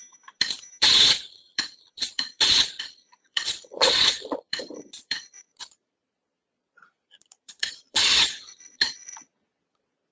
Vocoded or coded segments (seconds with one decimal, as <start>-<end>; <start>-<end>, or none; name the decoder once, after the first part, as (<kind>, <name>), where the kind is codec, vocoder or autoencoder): 0.8-10.1 (vocoder, Vocos)